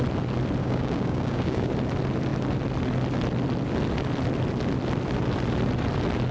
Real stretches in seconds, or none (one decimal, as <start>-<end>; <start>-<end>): 0.0-0.6; 1.7-6.3